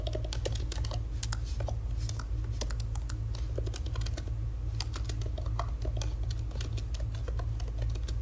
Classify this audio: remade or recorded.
recorded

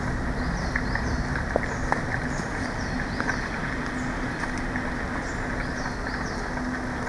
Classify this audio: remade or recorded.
recorded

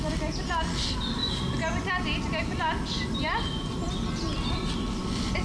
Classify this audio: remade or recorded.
recorded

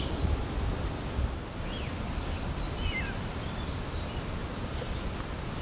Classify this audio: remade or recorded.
recorded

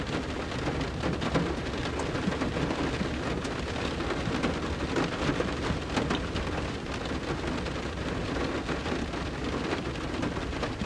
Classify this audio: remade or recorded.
recorded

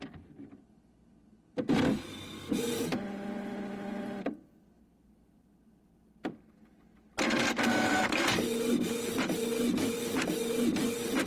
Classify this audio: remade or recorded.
recorded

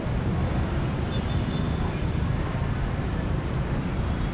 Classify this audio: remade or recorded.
remade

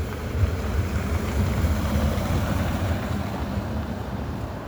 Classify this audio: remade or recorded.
remade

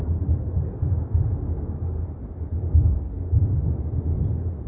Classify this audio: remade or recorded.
recorded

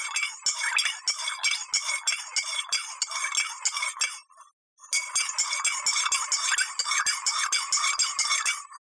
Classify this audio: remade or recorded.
recorded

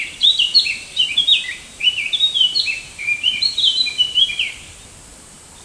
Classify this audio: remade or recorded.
remade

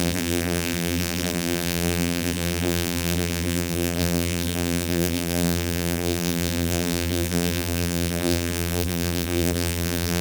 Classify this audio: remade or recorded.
remade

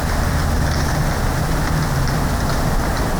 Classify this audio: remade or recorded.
recorded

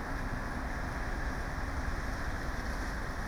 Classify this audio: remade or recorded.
recorded